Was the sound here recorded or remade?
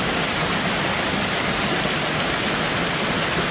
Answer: recorded